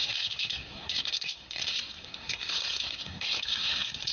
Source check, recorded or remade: remade